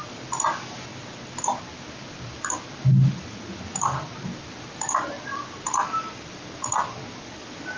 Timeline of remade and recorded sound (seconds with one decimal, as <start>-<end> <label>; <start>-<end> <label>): 0.0-7.8 recorded